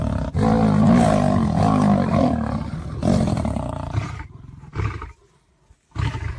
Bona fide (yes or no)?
yes